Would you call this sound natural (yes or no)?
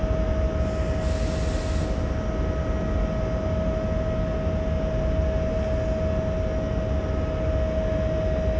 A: yes